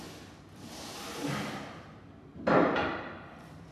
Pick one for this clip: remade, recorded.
recorded